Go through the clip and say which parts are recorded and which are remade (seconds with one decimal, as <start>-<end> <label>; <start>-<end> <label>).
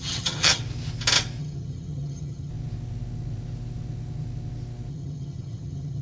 0.0-0.6 remade; 0.6-1.4 recorded; 1.4-2.5 remade; 2.5-4.9 recorded; 4.9-6.0 remade